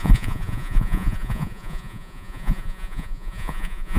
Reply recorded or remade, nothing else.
remade